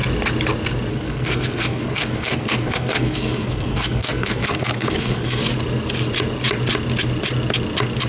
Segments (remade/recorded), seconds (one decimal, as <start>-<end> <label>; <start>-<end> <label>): 0.0-0.9 recorded; 0.9-5.4 remade; 5.4-8.1 recorded